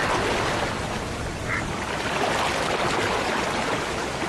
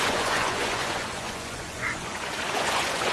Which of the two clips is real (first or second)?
first